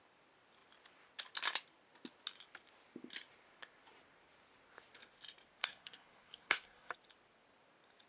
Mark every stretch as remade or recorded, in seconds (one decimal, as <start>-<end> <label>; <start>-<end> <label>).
0.0-5.6 recorded; 5.6-6.9 remade; 6.9-8.1 recorded